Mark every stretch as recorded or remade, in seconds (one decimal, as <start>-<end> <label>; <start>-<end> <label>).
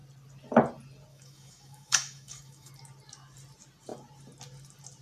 0.0-1.1 recorded; 1.1-2.7 remade; 2.7-5.0 recorded